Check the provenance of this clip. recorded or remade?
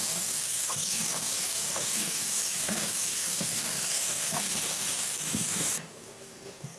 remade